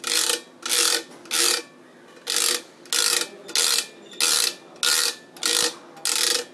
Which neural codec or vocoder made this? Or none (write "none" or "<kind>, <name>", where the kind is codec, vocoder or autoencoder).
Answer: none